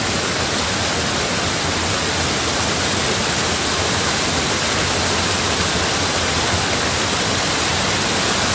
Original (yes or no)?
yes